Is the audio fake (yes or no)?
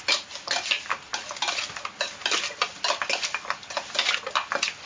no